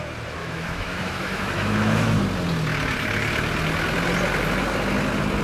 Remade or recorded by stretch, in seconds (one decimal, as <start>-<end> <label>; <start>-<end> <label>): 0.0-0.4 recorded; 0.4-2.2 remade; 2.2-5.4 recorded